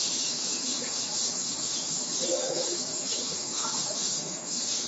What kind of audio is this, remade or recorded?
remade